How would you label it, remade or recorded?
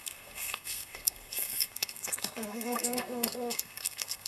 remade